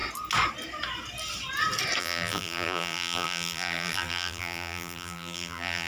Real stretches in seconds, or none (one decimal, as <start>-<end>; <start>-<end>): 0.0-2.0